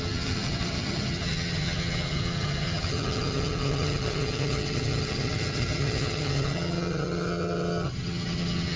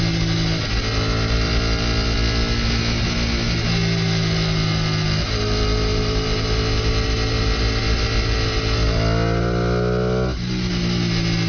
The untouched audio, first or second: second